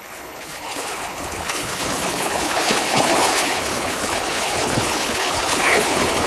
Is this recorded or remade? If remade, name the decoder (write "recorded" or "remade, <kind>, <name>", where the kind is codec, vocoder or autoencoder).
remade, codec, HILCodec